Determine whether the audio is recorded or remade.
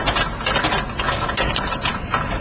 recorded